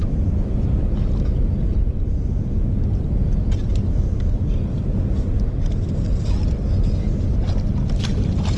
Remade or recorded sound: recorded